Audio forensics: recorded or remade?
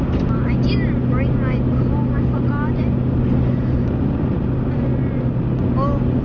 recorded